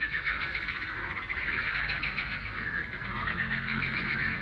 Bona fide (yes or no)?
no